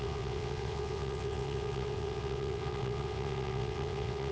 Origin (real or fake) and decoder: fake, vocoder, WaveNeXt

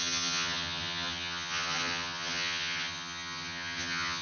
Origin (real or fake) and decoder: fake, vocoder, HiFi-GAN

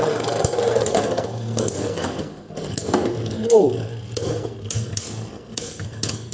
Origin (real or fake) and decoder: fake, codec, SNAC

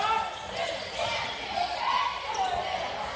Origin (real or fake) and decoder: real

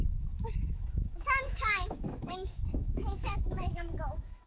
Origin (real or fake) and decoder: fake, autoencoder, DAC-VAE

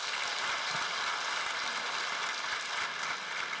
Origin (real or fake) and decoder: real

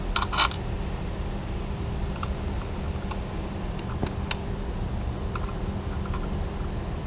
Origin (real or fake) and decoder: real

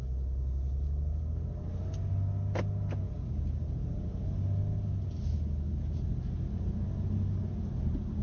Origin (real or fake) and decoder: real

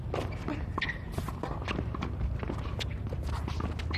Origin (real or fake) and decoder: real